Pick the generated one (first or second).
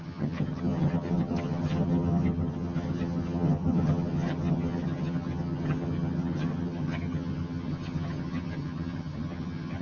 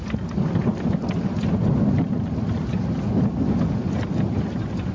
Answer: first